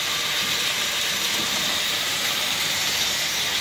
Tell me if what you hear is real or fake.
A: fake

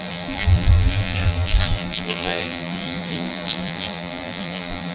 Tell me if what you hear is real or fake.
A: fake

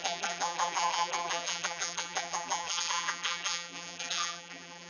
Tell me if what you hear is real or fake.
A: fake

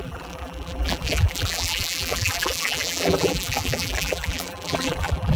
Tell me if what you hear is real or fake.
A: fake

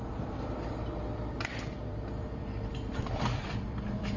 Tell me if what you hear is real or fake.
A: fake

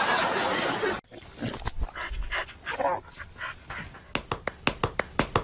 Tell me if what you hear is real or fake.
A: real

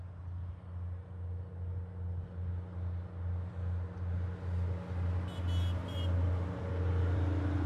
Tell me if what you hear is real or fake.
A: real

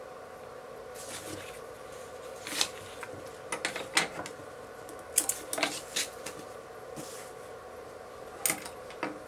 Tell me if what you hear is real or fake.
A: real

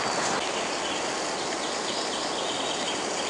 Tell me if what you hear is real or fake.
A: real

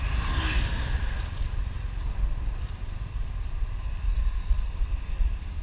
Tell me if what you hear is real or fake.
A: fake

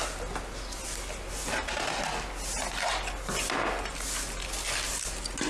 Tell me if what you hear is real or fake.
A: real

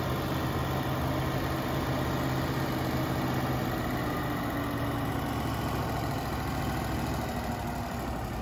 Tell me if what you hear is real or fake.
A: real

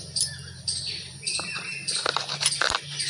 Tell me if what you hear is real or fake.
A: real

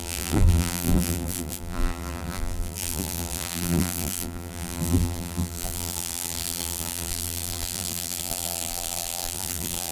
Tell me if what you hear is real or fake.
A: fake